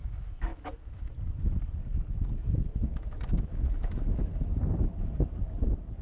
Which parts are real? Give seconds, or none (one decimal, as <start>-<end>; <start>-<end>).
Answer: 1.1-2.7; 4.6-6.0